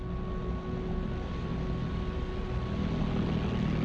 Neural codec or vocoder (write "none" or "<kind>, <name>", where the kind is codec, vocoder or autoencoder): none